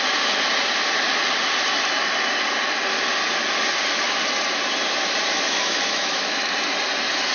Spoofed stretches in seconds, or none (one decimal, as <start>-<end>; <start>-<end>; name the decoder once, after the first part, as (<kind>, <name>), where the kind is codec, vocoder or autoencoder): 5.3-6.5 (autoencoder, DAC-VAE)